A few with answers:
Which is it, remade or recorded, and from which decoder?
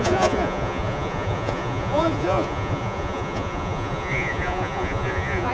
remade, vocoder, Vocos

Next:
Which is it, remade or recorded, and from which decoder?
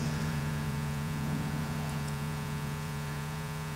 remade, vocoder, Vocos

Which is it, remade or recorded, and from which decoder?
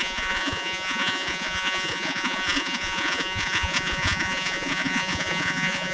remade, vocoder, Vocos